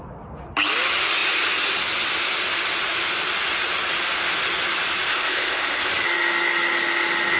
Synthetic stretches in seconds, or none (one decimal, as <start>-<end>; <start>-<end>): 5.1-5.9